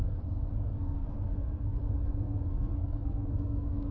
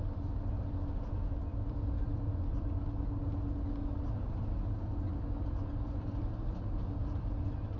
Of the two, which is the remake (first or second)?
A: first